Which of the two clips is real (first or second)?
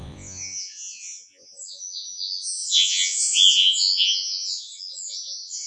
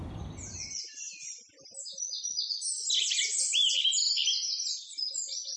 second